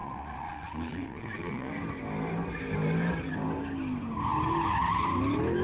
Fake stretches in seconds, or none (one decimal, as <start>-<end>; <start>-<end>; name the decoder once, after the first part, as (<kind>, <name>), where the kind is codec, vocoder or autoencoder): 0.0-1.7 (vocoder, Vocos)